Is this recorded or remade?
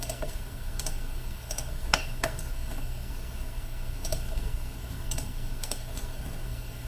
remade